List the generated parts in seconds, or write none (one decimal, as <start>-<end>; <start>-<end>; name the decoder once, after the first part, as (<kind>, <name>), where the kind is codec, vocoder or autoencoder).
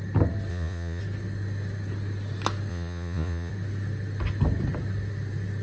0.5-1.0 (vocoder, Vocos); 2.7-3.5